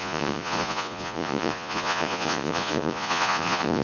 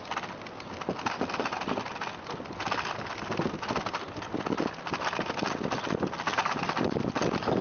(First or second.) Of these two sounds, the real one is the second